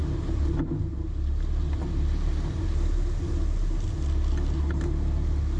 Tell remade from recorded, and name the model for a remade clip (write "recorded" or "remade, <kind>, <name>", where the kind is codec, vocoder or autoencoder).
recorded